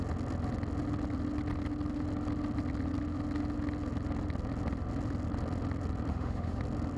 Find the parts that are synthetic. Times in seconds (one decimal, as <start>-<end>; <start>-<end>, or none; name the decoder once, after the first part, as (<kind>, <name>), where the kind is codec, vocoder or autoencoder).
6.1-6.6 (autoencoder, DAC-VAE)